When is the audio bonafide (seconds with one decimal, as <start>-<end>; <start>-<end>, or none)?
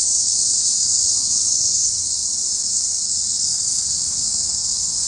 none